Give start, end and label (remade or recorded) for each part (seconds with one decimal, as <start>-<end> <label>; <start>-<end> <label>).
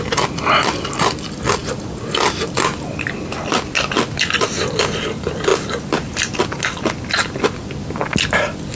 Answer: 0.0-5.5 recorded; 5.5-6.4 remade; 6.4-8.7 recorded